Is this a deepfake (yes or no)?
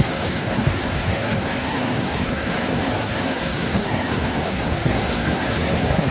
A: yes